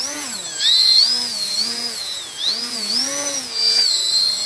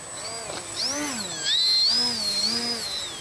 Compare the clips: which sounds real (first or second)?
second